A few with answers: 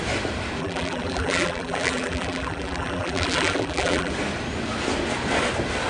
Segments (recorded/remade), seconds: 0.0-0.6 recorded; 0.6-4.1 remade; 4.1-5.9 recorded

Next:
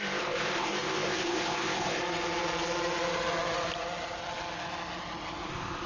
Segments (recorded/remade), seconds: 0.0-2.0 remade; 2.0-5.5 recorded; 5.5-5.9 remade

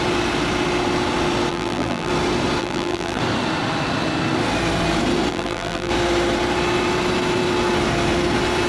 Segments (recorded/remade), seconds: 0.0-1.5 recorded; 1.5-2.1 remade; 2.1-2.6 recorded; 2.6-3.2 remade; 3.2-5.3 recorded; 5.3-5.9 remade; 5.9-8.7 recorded

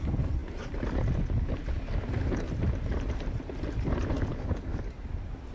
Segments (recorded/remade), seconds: 0.0-4.3 recorded; 4.3-4.9 remade; 4.9-5.5 recorded